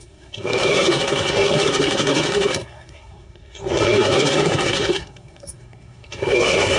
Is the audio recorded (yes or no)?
no